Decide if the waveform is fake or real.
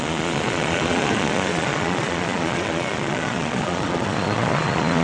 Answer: fake